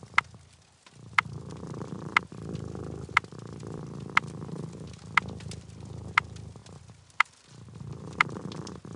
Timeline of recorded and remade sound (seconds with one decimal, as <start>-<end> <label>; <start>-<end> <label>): 0.0-6.6 recorded; 6.6-8.4 remade; 8.4-9.0 recorded